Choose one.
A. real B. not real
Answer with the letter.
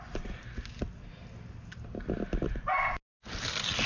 A